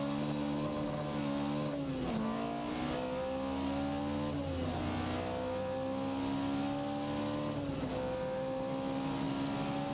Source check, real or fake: real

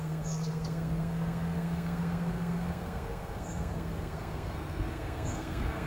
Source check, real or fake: fake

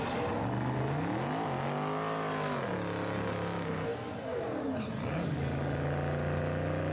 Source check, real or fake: real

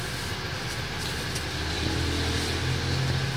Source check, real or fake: real